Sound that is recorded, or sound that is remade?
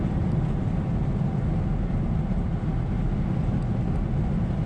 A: recorded